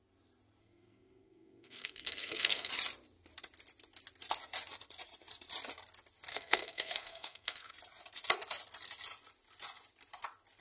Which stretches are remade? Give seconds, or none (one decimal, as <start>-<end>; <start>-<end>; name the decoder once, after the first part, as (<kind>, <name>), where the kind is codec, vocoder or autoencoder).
0.6-2.7 (codec, SNAC); 6.3-7.7